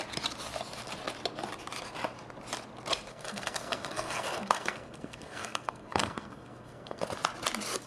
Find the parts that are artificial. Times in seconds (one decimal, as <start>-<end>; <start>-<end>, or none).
3.1-7.0